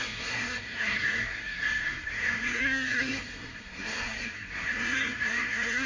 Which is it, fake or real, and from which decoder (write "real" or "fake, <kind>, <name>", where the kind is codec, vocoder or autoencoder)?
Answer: fake, codec, SNAC